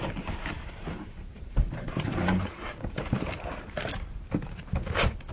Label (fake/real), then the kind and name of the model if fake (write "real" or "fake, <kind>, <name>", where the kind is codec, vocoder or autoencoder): fake, vocoder, BigVGAN v2